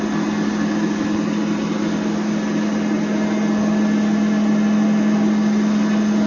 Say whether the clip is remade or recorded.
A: recorded